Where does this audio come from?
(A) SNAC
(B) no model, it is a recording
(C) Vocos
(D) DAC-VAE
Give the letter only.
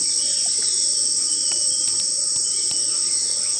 B